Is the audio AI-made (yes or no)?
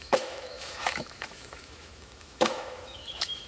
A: yes